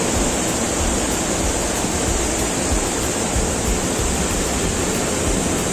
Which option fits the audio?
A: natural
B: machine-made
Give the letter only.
B